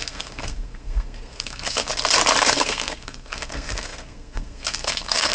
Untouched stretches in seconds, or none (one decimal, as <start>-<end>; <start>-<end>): 1.9-2.4